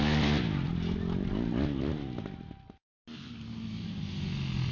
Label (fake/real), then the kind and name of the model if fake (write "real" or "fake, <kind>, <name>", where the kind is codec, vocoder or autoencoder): real